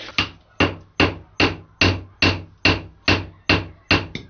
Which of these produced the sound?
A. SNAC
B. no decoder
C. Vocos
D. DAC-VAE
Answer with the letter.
B